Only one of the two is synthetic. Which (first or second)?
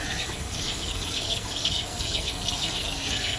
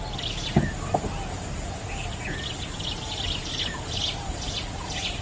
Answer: first